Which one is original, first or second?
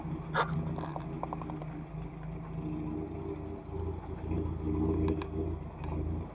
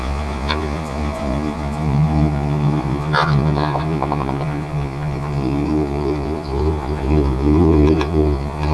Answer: first